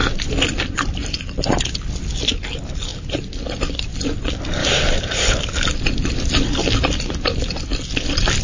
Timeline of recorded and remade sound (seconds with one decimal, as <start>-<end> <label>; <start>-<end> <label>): 0.0-1.6 remade; 1.6-4.6 recorded; 4.6-6.1 remade; 6.1-8.4 recorded